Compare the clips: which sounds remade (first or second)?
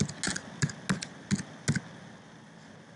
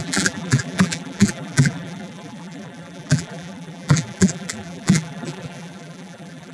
second